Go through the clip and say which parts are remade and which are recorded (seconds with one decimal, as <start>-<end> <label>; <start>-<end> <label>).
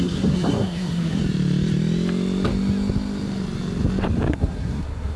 0.0-1.2 remade; 1.2-4.3 recorded; 4.3-5.2 remade